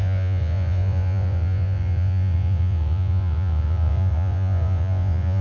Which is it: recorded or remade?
remade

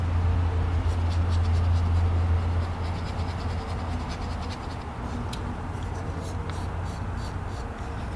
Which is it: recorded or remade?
recorded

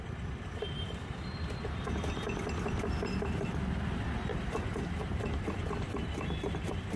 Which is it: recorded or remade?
remade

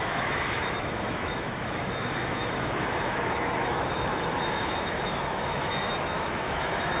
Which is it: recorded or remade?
remade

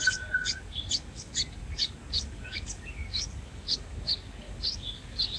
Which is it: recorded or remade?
remade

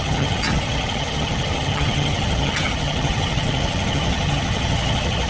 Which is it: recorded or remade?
remade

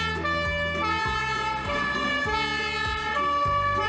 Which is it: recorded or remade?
recorded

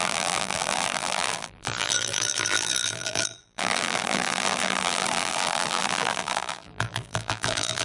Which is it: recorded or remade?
remade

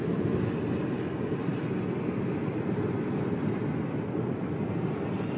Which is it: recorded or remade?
recorded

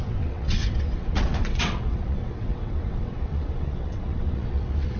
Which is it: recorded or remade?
remade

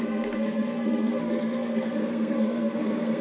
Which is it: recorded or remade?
remade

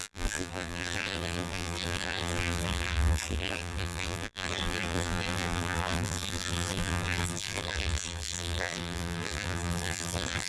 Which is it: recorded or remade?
remade